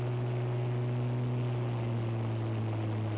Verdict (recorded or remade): recorded